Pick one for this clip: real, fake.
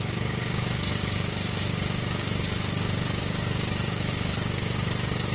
fake